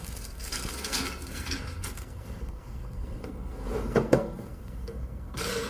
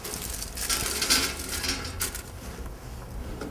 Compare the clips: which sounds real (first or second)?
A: second